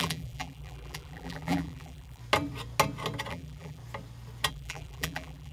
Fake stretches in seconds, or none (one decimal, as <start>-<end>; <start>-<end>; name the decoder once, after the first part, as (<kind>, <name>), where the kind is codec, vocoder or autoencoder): 0.0-2.2 (vocoder, BigVGAN v2); 3.3-3.8; 4.5-5.5